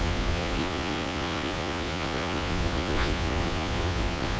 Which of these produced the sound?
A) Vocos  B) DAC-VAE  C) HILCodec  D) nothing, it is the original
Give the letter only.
A